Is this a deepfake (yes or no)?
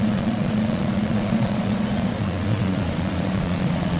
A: yes